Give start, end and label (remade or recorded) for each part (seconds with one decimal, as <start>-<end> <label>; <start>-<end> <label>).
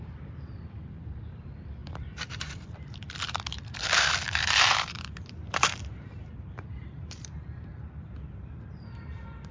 0.0-9.5 remade